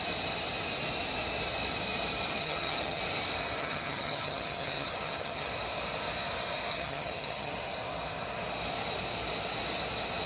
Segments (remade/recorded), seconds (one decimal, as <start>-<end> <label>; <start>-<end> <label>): 0.0-2.3 recorded; 2.3-3.0 remade; 3.0-3.6 recorded; 3.6-5.5 remade; 5.5-6.7 recorded; 6.7-7.5 remade; 7.5-10.3 recorded